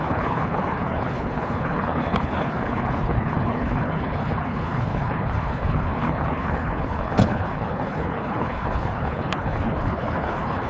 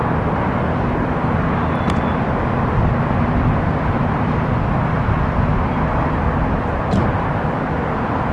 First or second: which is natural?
second